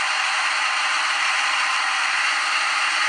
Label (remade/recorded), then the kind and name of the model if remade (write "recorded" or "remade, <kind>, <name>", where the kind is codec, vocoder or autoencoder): recorded